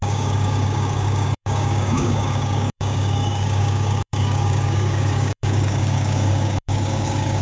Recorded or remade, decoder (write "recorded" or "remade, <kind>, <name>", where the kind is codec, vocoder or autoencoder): remade, codec, DAC